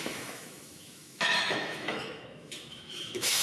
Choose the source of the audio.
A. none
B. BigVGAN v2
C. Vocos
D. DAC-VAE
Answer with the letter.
D